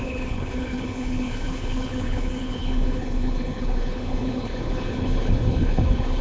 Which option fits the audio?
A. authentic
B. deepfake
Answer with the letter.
B